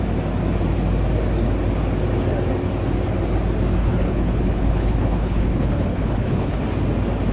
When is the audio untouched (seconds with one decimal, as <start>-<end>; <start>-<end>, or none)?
0.0-3.8; 6.6-7.3